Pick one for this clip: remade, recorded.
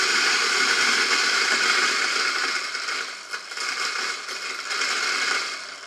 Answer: recorded